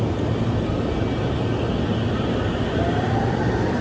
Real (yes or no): yes